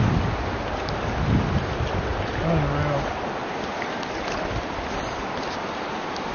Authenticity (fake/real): real